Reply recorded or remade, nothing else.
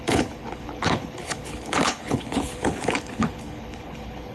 remade